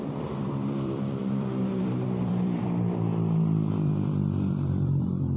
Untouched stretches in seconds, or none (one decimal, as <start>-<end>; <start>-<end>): 3.1-3.7